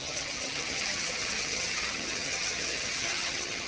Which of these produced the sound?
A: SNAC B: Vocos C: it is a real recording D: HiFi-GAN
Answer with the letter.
D